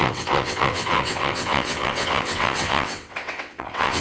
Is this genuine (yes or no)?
no